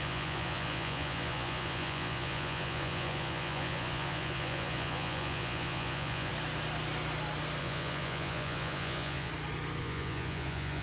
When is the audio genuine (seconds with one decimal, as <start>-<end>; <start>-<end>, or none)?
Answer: 6.3-7.6; 9.3-9.8